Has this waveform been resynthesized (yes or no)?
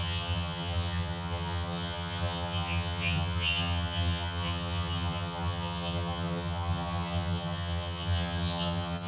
yes